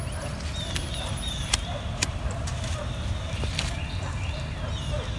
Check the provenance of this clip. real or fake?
fake